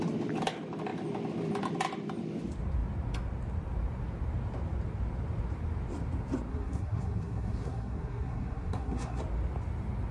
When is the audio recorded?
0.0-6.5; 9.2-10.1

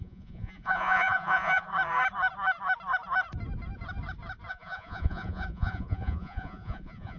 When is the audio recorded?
1.7-4.5

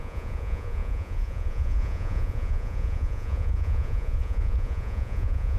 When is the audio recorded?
none